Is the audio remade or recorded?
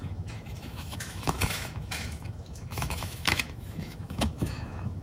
remade